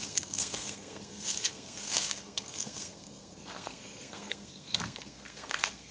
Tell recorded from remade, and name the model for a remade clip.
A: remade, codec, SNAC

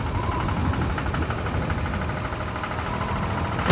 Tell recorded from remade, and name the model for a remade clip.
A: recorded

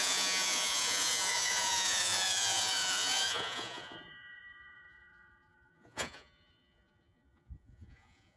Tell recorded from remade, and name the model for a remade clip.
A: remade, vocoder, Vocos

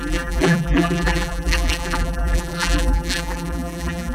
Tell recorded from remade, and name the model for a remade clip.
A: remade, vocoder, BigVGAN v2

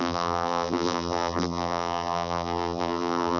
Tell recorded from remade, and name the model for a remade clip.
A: remade, vocoder, BigVGAN v2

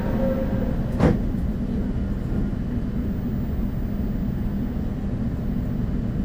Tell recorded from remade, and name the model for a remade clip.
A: recorded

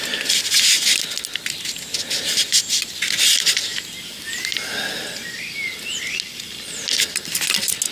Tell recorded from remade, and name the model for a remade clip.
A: recorded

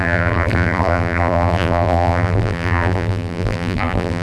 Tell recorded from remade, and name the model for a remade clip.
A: remade, vocoder, BigVGAN v2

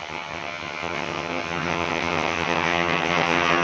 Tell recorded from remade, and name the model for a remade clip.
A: remade, vocoder, HiFi-GAN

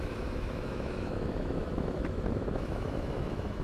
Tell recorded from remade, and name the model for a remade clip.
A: remade, autoencoder, DAC-VAE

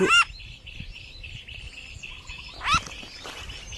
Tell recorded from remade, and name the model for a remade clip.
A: recorded